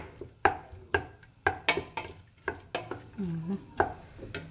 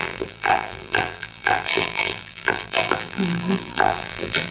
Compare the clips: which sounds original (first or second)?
first